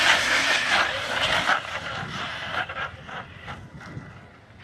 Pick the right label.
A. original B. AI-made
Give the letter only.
A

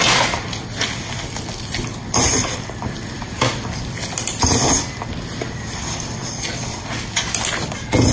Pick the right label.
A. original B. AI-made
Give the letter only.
A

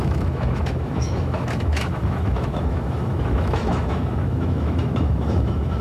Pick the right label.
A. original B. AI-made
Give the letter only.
B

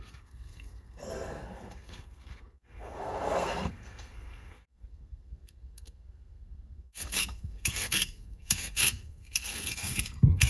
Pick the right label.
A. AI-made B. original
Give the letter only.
A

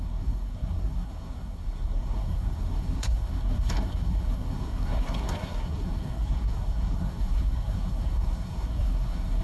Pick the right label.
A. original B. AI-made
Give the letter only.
B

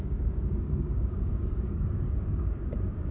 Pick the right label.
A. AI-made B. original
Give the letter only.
A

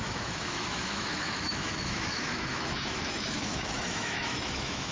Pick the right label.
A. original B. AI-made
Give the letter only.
B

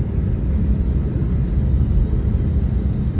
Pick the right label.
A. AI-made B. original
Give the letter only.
B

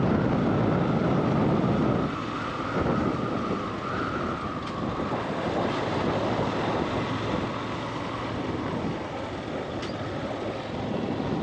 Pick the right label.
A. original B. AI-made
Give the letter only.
A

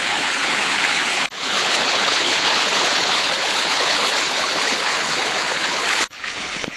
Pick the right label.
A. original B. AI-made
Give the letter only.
B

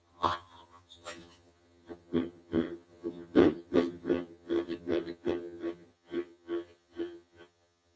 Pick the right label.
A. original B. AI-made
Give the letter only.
B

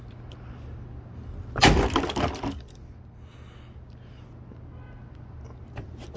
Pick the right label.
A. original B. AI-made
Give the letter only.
A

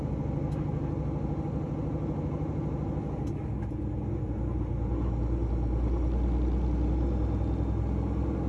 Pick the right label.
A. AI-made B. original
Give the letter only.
B